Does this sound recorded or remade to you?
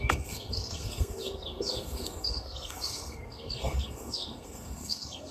remade